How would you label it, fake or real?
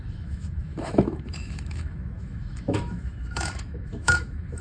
fake